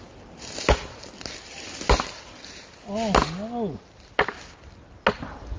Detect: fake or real real